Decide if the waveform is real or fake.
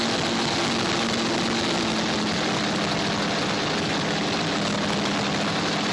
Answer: real